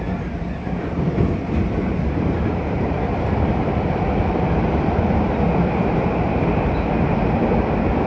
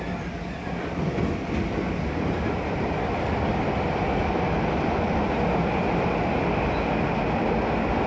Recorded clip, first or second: second